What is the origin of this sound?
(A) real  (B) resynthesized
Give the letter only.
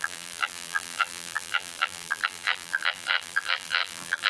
B